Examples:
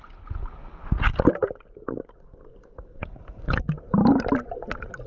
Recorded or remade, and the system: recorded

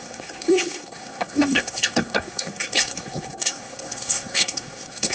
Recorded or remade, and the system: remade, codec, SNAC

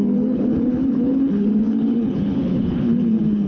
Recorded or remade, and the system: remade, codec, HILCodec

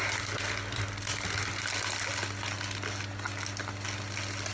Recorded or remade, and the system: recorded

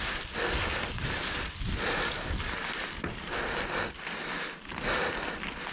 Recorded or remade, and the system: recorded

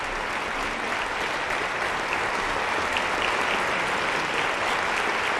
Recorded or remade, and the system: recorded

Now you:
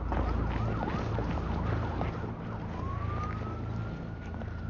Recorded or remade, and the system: recorded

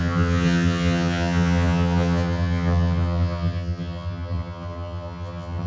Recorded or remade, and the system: remade, vocoder, HiFi-GAN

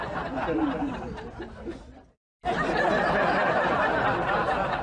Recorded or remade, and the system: recorded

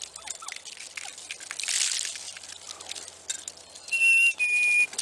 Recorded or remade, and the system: recorded